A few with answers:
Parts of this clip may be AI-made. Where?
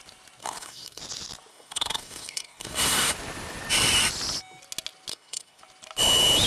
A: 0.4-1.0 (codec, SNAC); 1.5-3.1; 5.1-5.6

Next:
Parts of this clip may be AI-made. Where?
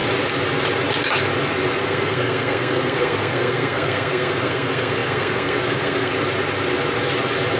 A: 1.8-6.1 (codec, SNAC)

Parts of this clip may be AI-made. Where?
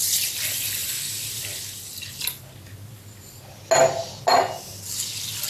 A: none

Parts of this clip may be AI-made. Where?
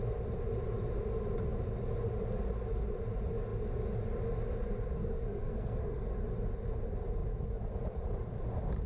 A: 5.0-6.1 (codec, SNAC)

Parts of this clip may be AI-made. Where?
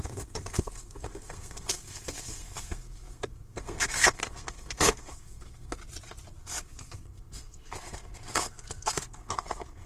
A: 0.0-5.8 (codec, SNAC); 6.4-9.9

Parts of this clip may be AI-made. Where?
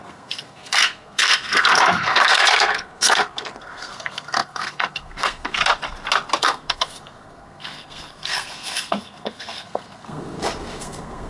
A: 0.0-5.6 (codec, SNAC); 6.4-11.3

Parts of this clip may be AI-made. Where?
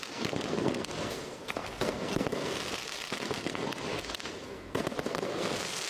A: 0.0-5.9 (codec, SNAC)